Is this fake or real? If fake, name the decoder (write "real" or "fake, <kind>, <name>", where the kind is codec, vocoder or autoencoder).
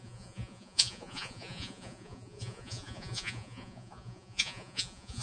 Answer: fake, vocoder, Vocos